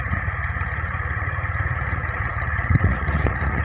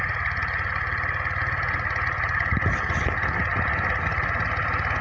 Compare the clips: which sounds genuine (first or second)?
second